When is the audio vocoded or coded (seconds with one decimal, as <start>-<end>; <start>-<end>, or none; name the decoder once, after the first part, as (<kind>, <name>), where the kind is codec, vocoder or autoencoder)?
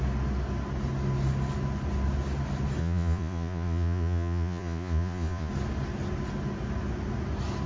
2.8-5.5 (vocoder, Vocos)